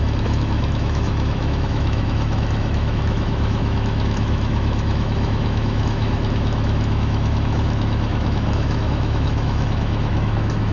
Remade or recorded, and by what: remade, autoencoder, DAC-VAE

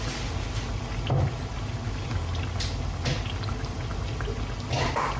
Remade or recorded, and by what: recorded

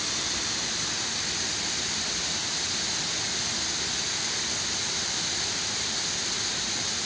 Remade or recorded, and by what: recorded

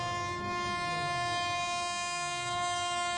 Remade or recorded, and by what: recorded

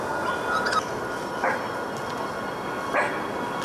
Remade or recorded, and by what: recorded